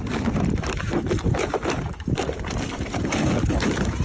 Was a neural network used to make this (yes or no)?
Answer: yes